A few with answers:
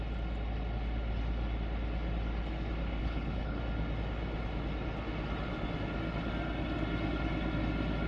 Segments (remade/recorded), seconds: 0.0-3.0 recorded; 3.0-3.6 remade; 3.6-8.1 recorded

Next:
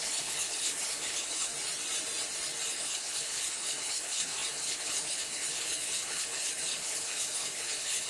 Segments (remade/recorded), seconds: 0.0-1.5 remade; 1.5-2.7 recorded; 2.7-8.1 remade

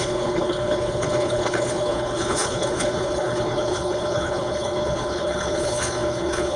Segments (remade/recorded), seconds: 0.0-6.6 remade